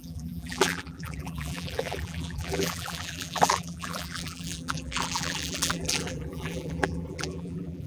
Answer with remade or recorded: remade